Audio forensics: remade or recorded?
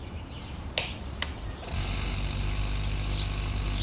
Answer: recorded